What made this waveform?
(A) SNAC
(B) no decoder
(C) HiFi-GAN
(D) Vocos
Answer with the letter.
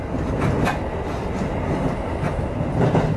B